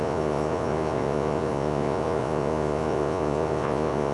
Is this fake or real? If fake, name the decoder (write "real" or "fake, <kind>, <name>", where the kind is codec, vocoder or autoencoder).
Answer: fake, vocoder, Vocos